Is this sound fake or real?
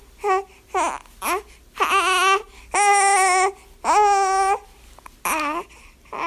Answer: real